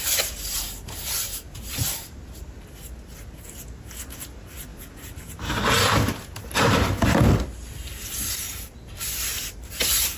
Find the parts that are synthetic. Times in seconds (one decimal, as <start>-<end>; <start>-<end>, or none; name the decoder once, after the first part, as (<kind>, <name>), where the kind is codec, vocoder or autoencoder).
none